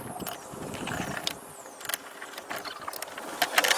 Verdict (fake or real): real